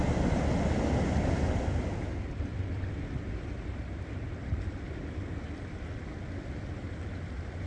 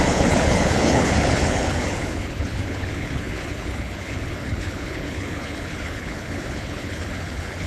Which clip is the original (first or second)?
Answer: first